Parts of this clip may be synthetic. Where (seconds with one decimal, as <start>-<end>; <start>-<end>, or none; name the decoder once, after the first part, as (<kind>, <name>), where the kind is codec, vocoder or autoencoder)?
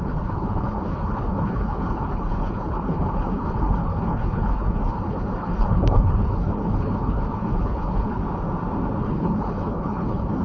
0.0-8.2 (codec, HILCodec); 9.0-10.4